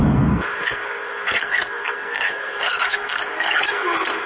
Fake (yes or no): yes